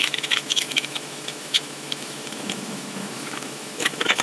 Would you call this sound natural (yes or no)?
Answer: no